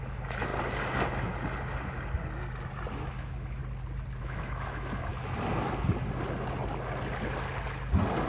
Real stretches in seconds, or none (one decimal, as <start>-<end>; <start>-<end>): 0.5-2.9; 3.6-4.2; 5.1-8.3